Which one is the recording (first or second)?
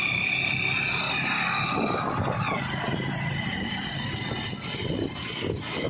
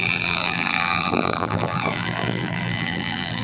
first